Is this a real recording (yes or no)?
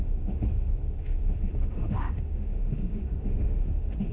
no